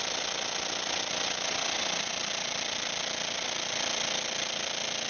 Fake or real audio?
real